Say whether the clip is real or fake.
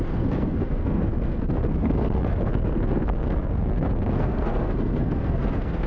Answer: fake